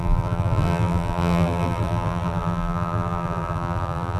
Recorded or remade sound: remade